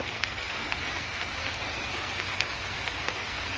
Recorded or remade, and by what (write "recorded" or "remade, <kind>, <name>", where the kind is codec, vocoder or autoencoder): remade, codec, SNAC